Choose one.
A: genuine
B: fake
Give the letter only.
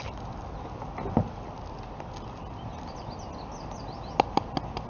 A